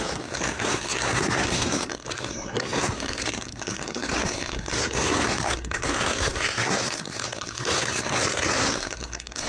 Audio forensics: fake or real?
fake